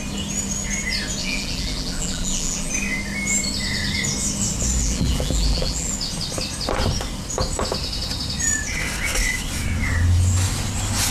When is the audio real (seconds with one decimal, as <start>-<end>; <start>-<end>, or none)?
0.0-1.2; 2.7-4.8; 5.9-11.1